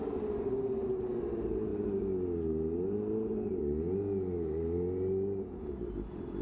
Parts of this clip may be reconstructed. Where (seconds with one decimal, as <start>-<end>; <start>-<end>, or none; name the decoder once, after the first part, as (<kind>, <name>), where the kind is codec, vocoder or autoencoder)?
none